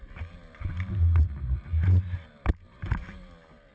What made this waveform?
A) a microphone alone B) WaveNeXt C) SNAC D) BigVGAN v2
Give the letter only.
D